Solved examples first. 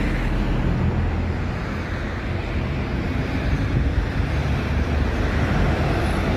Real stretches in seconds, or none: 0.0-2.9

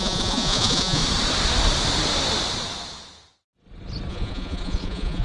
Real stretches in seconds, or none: 1.0-4.1